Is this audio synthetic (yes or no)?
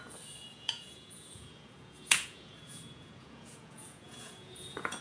yes